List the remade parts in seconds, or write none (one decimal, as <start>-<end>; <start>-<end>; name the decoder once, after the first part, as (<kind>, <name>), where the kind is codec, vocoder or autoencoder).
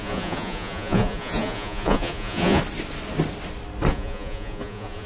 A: 0.0-2.6 (vocoder, Vocos); 3.9-5.1